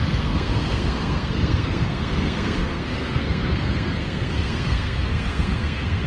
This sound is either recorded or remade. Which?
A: remade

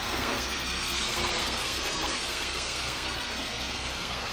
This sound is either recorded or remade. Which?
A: remade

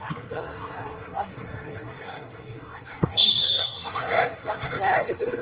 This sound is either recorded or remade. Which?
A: remade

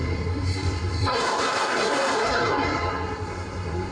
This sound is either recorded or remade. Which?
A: remade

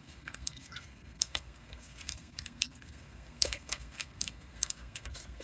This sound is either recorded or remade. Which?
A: remade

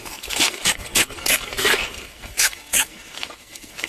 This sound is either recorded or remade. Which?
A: remade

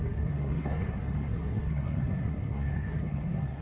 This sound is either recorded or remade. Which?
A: remade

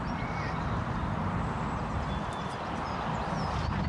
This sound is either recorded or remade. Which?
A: recorded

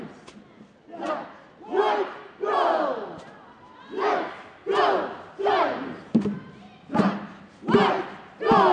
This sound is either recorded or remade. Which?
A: recorded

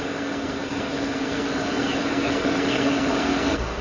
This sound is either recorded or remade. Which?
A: remade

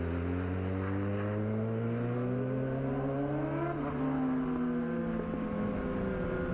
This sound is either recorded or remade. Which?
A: recorded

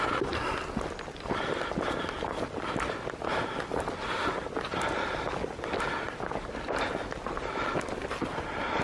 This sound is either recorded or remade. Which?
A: recorded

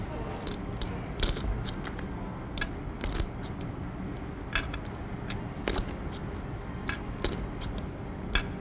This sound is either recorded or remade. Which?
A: recorded